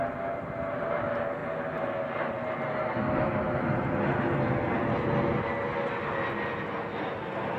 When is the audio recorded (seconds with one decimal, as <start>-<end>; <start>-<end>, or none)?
0.0-7.6